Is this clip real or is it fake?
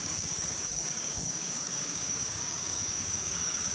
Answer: fake